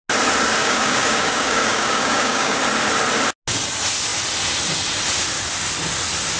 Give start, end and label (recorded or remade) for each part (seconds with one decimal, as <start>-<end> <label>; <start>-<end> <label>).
0.0-0.6 recorded; 0.6-2.6 remade; 2.6-6.4 recorded